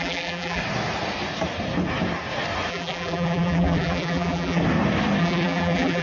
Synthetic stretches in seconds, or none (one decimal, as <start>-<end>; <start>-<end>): 0.0-0.6; 2.7-4.6; 5.2-6.0